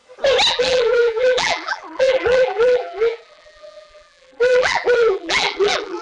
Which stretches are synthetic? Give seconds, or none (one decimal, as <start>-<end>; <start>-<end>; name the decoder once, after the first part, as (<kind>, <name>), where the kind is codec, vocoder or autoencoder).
0.5-6.0 (vocoder, BigVGAN v2)